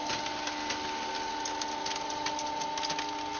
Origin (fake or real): real